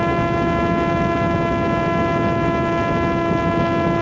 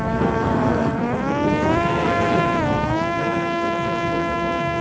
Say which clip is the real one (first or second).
first